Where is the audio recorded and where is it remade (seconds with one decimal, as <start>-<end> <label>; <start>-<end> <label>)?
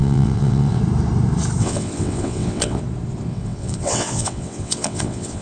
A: 0.0-0.8 remade; 0.8-1.6 recorded; 1.6-2.8 remade; 2.8-3.3 recorded; 3.3-5.4 remade